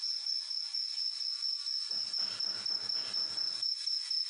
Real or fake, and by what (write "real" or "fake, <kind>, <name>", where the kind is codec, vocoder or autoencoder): real